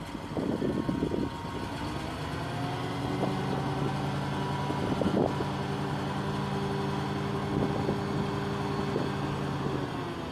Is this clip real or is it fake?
real